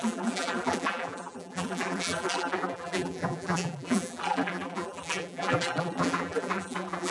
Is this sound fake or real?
fake